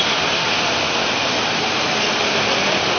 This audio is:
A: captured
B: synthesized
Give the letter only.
A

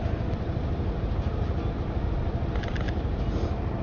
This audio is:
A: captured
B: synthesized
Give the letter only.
A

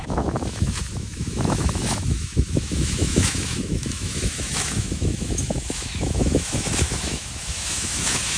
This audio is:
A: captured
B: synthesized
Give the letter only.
B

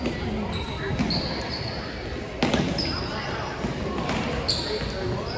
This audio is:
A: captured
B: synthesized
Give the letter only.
A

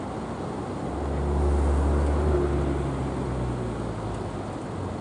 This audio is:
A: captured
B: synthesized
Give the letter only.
A